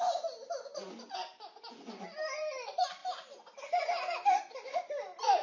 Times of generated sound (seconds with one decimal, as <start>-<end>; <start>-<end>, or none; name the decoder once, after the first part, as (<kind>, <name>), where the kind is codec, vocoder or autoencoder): none